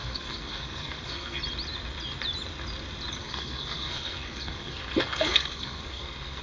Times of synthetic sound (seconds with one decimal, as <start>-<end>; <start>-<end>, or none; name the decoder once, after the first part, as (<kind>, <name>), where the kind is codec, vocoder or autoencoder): 0.0-1.4 (codec, SNAC); 3.2-6.4